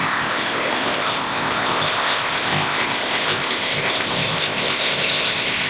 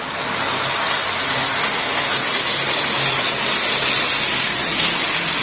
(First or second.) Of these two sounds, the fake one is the first